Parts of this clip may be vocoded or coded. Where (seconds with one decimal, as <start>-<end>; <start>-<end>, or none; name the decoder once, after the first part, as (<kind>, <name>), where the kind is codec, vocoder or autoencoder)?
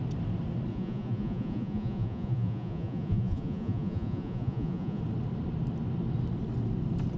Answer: 0.7-5.0 (vocoder, Vocos)